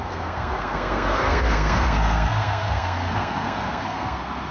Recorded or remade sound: remade